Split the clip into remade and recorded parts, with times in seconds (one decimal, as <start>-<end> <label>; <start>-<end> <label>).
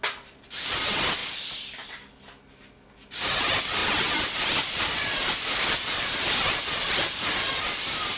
0.0-8.2 recorded